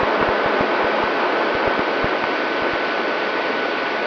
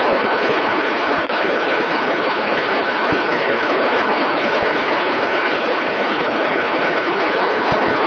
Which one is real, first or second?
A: first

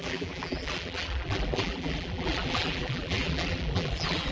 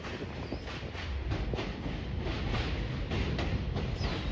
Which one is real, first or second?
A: second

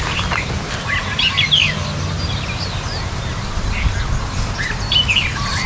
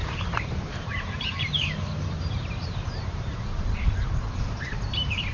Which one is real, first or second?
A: first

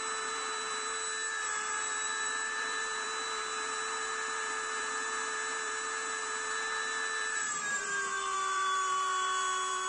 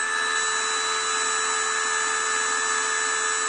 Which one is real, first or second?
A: second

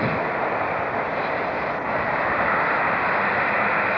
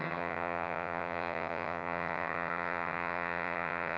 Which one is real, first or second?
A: first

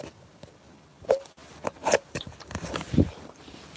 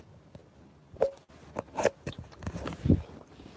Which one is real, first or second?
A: second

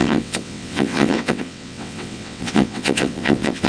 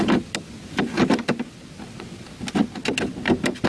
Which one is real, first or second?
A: second